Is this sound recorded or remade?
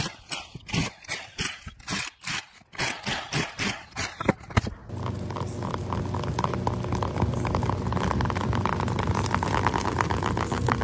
recorded